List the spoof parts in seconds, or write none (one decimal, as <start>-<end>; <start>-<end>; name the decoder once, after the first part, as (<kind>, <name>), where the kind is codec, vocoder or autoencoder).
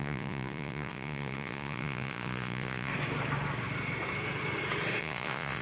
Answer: 0.0-2.9 (vocoder, Vocos); 5.0-5.6